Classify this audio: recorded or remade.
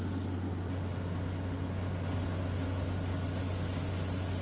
recorded